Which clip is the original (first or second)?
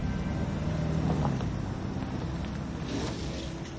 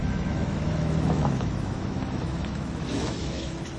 first